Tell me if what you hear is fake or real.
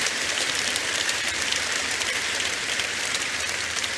fake